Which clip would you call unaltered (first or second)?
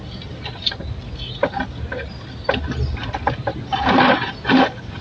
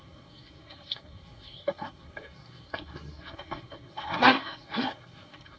first